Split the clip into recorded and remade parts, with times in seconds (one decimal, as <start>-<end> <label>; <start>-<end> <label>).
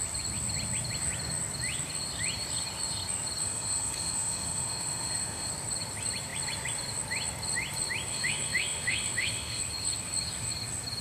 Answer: 0.0-3.4 recorded; 3.4-5.5 remade; 5.5-8.1 recorded; 8.1-9.6 remade; 9.6-11.0 recorded